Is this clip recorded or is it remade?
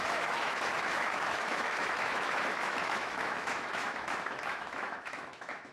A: remade